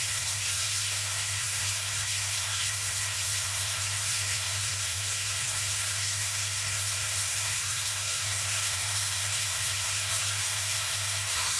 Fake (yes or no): yes